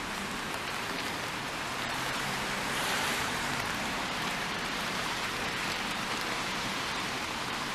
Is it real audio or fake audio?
fake